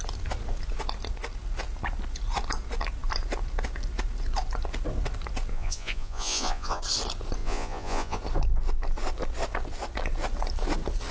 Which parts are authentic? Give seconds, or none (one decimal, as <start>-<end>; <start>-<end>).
0.0-5.5; 6.8-7.4; 8.2-11.1

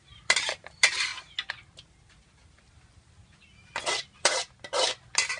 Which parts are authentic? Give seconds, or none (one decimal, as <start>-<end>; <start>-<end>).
1.1-2.0; 3.2-4.2

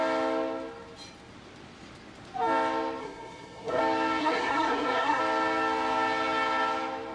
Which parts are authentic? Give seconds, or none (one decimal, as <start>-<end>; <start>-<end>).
0.0-3.0; 3.8-4.2; 5.2-7.1

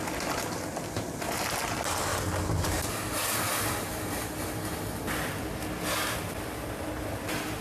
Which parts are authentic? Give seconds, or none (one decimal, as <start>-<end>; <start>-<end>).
0.0-7.6

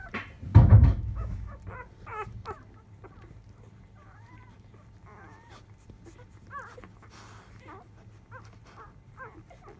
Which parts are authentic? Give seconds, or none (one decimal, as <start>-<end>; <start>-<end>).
0.0-0.5; 1.6-9.8

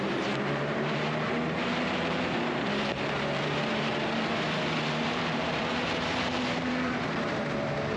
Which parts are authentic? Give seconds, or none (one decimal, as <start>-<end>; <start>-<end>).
none